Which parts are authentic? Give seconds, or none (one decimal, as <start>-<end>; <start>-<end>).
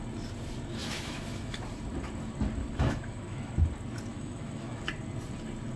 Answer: 0.0-0.8; 1.6-2.6; 3.5-4.1; 4.9-5.8